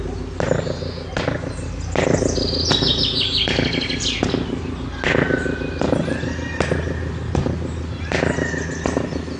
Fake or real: real